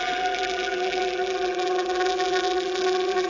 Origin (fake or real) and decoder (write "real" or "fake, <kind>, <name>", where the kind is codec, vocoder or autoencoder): fake, vocoder, BigVGAN v2